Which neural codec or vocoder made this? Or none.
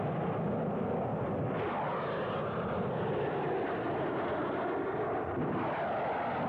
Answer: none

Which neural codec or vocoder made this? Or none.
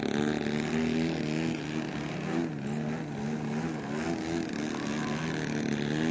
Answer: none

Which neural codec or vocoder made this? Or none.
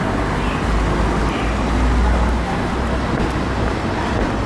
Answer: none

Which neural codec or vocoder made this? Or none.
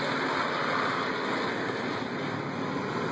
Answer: none